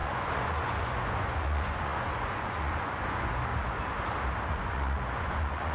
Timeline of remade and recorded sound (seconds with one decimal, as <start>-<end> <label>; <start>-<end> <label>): 0.0-3.5 remade; 3.5-4.5 recorded; 4.5-5.7 remade